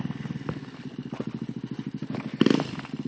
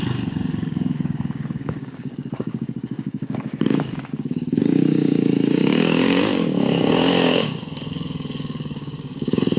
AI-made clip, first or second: second